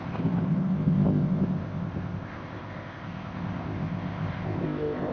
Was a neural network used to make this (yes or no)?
yes